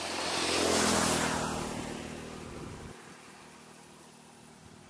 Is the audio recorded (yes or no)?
yes